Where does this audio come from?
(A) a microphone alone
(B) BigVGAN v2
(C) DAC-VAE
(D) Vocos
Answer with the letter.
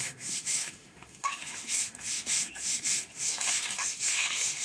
C